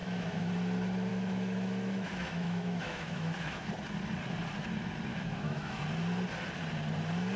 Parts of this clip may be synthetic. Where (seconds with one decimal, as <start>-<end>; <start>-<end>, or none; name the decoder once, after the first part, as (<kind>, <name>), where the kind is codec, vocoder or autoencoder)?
0.0-0.5 (autoencoder, DAC-VAE); 1.1-3.7; 5.1-5.8